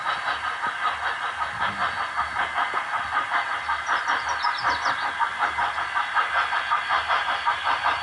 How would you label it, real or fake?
real